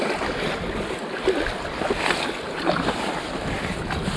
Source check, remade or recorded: recorded